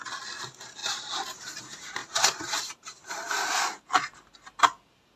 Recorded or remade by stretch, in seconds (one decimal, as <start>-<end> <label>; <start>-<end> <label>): 0.0-0.8 recorded; 0.8-1.6 remade; 1.6-2.0 recorded; 2.0-3.1 remade; 3.1-5.2 recorded